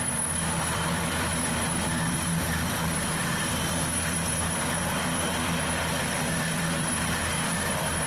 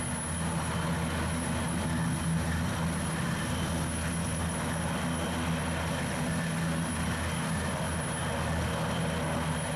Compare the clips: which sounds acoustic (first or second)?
second